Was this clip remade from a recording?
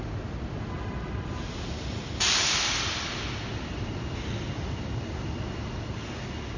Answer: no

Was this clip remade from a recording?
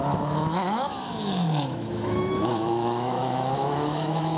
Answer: yes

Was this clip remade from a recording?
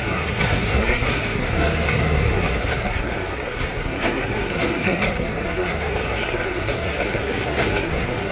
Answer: yes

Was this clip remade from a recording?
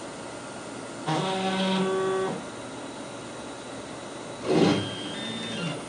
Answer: no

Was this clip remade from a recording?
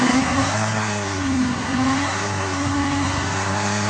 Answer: yes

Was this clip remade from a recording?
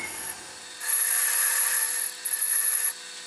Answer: no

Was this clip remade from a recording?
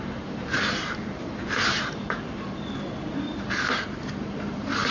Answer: yes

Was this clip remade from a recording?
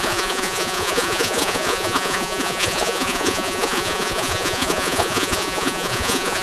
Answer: yes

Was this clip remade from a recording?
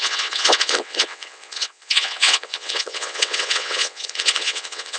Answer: yes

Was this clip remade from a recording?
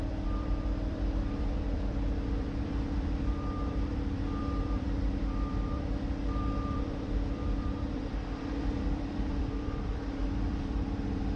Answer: yes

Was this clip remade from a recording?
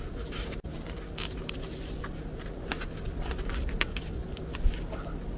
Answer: no